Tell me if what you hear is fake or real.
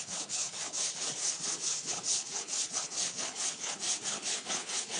fake